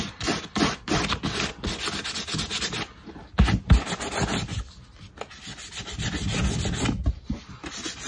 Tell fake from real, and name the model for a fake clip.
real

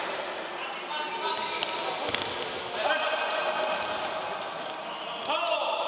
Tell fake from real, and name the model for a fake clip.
real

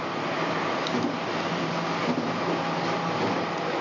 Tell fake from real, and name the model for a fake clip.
real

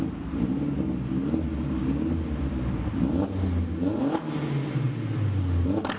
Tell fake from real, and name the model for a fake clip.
real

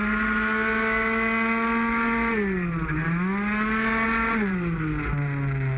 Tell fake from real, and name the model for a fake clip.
real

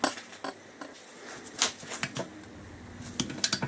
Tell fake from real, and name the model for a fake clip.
real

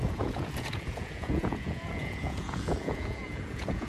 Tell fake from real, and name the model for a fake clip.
fake, vocoder, Vocos